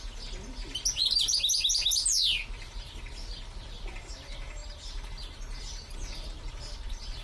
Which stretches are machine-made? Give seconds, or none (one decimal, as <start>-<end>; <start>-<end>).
none